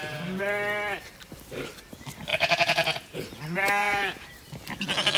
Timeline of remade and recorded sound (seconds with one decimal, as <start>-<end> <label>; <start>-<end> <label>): 0.0-2.3 recorded; 2.3-3.2 remade; 3.2-3.8 recorded; 3.8-4.3 remade; 4.3-5.2 recorded